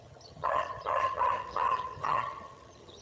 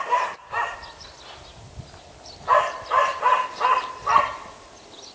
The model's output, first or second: first